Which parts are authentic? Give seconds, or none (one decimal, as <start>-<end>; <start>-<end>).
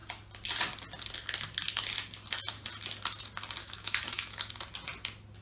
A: 0.0-3.6; 4.5-5.4